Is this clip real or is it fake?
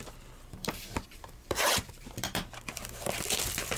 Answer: fake